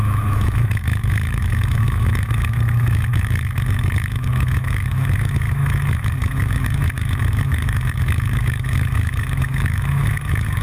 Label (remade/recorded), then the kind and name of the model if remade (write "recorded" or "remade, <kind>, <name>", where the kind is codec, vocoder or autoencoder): remade, autoencoder, DAC-VAE